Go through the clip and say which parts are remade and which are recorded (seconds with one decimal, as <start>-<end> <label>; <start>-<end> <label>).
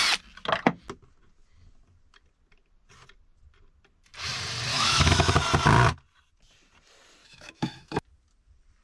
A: 0.0-4.7 recorded; 4.7-5.3 remade; 5.3-7.2 recorded; 7.2-8.0 remade; 8.0-8.8 recorded